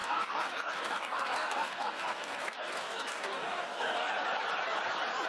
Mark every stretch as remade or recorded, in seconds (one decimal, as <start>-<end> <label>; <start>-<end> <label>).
0.0-4.1 remade; 4.1-5.3 recorded